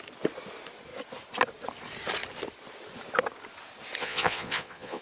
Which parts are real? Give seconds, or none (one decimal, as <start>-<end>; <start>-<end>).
0.0-4.0